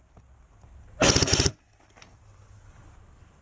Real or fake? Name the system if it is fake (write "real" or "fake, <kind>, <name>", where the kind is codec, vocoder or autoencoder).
real